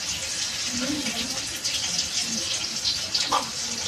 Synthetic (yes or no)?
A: no